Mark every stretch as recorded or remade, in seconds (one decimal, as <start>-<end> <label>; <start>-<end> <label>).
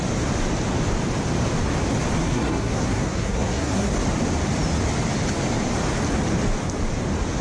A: 0.0-2.2 recorded; 2.2-3.9 remade; 3.9-7.4 recorded